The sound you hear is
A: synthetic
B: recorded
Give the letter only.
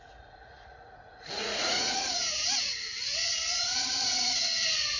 A